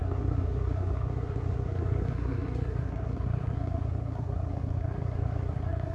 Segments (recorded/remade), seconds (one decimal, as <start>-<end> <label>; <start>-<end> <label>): 0.0-5.9 remade